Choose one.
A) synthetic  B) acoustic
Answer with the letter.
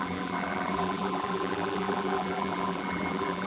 A